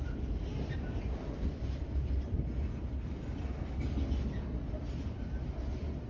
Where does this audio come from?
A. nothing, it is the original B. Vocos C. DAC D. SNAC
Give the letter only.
A